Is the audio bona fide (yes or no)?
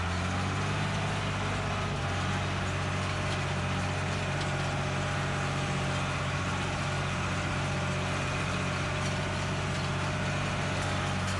yes